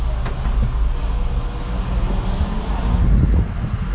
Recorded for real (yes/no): yes